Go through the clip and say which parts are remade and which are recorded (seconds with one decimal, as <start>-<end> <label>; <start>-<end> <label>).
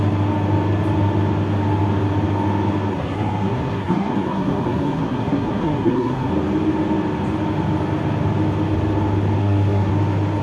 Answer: 0.0-2.9 recorded; 2.9-6.3 remade; 6.3-9.4 recorded; 9.4-9.9 remade; 9.9-10.4 recorded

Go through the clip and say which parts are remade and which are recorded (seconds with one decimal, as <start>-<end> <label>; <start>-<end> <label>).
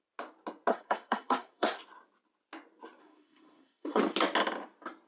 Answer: 0.0-0.7 recorded; 0.7-1.8 remade; 1.8-3.0 recorded; 3.0-4.0 remade; 4.0-5.1 recorded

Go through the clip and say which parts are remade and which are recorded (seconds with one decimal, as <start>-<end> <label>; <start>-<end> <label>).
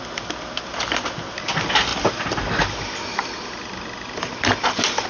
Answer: 0.0-5.1 recorded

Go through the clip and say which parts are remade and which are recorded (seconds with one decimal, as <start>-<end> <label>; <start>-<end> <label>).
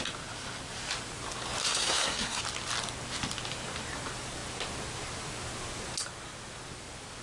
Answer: 0.0-1.6 recorded; 1.6-2.4 remade; 2.4-7.2 recorded